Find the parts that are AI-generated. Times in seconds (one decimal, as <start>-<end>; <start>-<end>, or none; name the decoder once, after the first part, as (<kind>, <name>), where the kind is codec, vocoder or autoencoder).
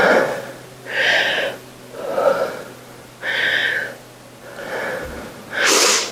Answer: none